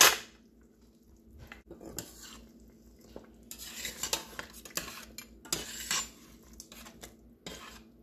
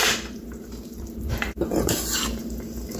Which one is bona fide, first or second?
first